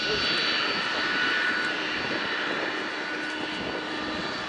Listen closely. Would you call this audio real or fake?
real